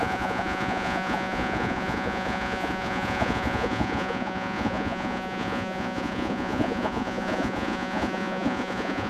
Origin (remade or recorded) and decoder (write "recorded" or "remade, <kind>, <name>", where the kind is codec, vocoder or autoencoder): remade, vocoder, Vocos